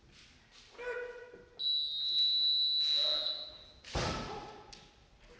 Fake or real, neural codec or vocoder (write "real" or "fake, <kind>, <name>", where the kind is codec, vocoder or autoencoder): real